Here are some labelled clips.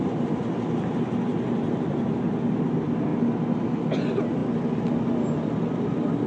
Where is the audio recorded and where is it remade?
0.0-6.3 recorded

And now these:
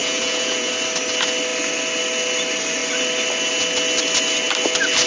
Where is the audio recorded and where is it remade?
0.0-0.7 remade; 0.7-5.1 recorded

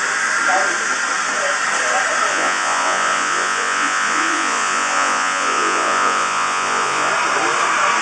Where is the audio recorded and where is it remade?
0.0-2.3 recorded; 2.3-7.1 remade; 7.1-8.0 recorded

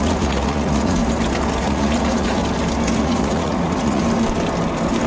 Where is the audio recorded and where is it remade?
0.0-1.0 remade; 1.0-1.6 recorded; 1.6-2.4 remade; 2.4-3.0 recorded; 3.0-4.0 remade; 4.0-5.1 recorded

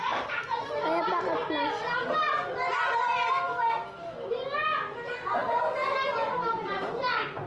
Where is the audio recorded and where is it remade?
0.0-7.5 recorded

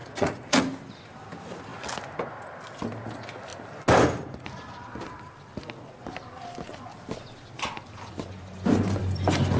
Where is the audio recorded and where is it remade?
0.0-0.6 remade; 0.6-9.6 recorded

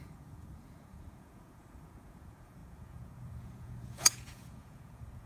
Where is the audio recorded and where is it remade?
0.0-5.3 remade